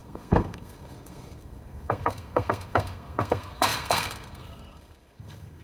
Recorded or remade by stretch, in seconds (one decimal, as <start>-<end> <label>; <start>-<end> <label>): 0.0-5.6 remade